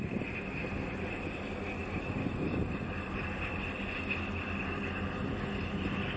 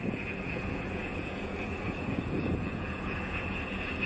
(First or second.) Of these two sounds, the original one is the first